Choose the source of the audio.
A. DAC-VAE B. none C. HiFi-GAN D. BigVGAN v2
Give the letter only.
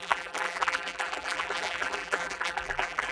D